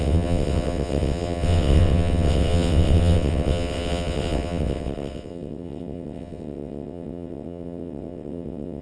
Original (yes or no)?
no